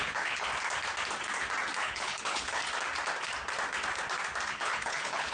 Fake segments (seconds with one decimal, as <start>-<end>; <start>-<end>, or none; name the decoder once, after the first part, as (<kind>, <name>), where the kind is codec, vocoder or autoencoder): 0.0-0.5 (codec, HILCodec); 1.8-2.6; 4.5-5.3